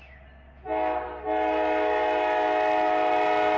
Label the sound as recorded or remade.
recorded